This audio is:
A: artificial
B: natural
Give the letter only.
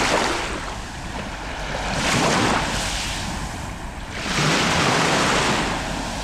B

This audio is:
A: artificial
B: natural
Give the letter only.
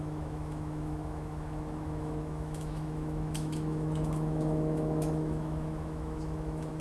A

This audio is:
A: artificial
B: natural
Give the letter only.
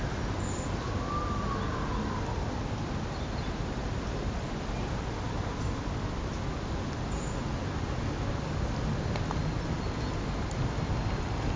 B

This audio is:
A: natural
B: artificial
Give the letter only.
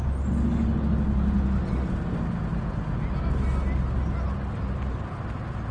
A